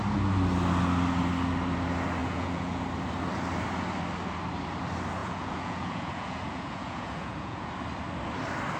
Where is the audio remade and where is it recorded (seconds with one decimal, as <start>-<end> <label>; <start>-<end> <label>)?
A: 0.0-2.2 recorded; 2.2-2.8 remade; 2.8-5.2 recorded; 5.2-7.7 remade; 7.7-8.8 recorded